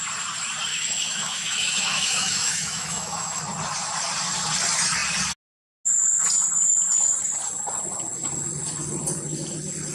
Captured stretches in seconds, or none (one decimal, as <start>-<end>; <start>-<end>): 0.0-0.7; 3.4-9.9